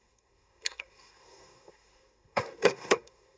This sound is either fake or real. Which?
fake